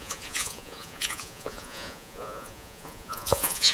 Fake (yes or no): yes